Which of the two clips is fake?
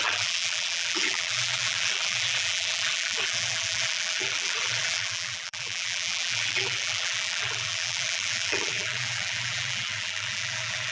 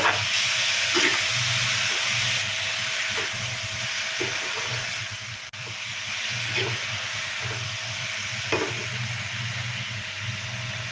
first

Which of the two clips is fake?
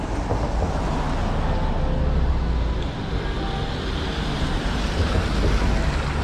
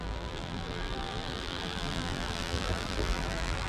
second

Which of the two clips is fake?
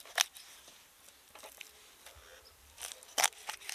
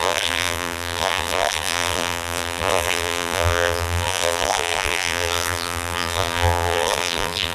second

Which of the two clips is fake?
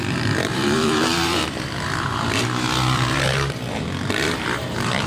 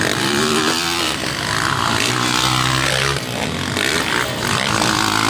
first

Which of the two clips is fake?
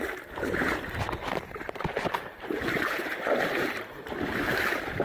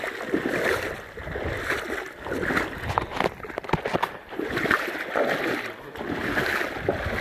first